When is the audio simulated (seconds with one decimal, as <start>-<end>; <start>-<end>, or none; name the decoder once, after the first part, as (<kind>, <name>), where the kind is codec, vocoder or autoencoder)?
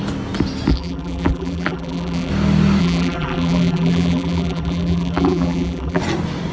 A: 0.7-2.3 (vocoder, BigVGAN v2); 2.8-6.0